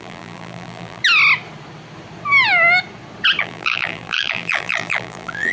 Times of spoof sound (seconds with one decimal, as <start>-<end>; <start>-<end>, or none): 0.0-1.0; 3.4-5.5